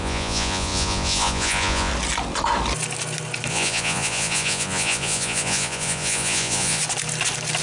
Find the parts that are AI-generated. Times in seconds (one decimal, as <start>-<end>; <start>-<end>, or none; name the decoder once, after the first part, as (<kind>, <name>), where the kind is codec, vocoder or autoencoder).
0.0-1.9 (vocoder, Vocos); 3.5-6.8